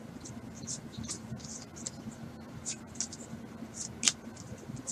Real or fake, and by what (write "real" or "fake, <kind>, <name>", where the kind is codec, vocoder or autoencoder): real